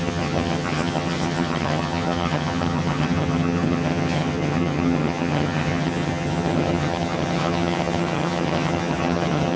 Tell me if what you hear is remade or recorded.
remade